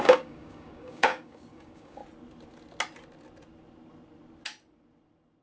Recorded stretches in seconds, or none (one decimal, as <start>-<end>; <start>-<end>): 2.0-5.4